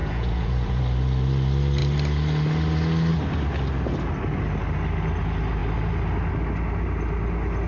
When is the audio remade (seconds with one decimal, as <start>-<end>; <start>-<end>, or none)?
0.0-0.8